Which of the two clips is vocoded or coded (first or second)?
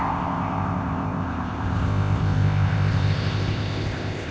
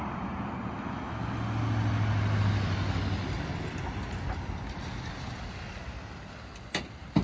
first